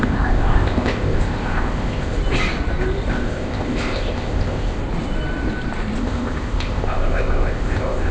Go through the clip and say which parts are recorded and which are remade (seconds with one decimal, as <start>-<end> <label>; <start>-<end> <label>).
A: 0.0-2.2 remade; 2.2-3.1 recorded; 3.1-4.8 remade; 4.8-6.0 recorded; 6.0-8.1 remade